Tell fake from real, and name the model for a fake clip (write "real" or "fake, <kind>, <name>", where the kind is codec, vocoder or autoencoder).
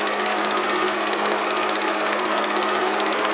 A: fake, codec, SNAC